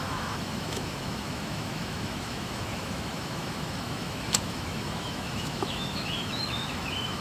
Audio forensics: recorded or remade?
remade